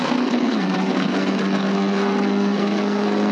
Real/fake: fake